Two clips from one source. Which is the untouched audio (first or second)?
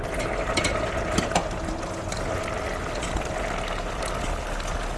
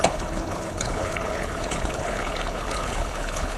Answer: first